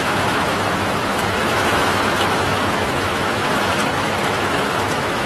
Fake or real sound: fake